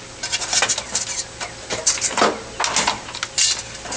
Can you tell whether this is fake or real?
real